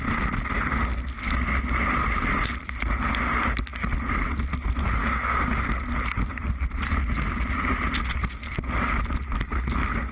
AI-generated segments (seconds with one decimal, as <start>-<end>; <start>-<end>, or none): none